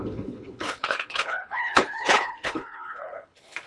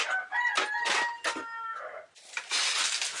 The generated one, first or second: first